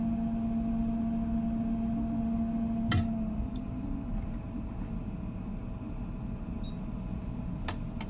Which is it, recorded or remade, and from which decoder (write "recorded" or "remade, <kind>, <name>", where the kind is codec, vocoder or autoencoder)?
recorded